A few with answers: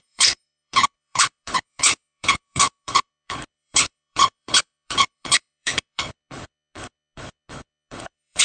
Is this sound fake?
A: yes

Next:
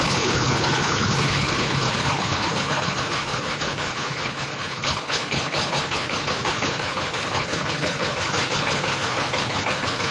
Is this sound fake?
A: yes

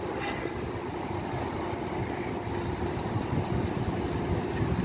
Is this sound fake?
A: no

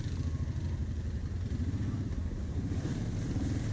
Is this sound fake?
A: no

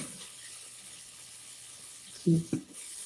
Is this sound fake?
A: yes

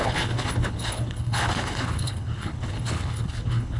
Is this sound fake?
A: yes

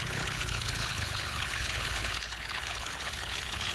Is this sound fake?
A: yes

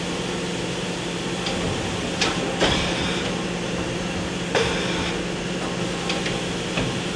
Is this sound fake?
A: no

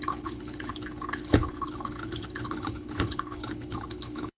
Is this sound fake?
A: yes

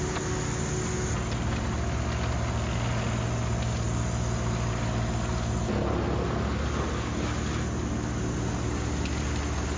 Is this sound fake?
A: no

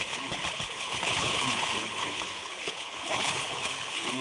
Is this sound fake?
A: yes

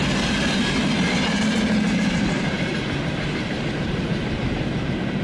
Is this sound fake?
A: no